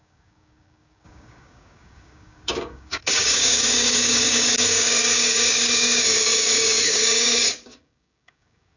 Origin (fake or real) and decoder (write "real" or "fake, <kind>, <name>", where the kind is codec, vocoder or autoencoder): fake, codec, DAC